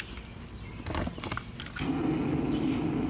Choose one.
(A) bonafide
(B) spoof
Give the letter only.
A